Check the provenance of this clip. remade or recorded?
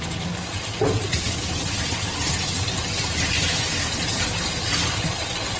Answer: recorded